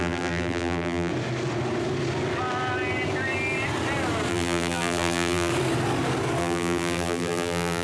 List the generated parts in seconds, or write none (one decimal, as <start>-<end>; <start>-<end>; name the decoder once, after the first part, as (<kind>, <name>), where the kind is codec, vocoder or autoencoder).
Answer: 0.0-1.1 (vocoder, BigVGAN v2); 4.3-5.5; 6.4-7.8